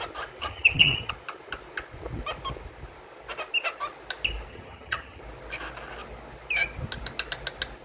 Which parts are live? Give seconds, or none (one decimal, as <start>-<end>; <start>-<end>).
0.0-0.4; 1.1-4.5; 5.2-7.8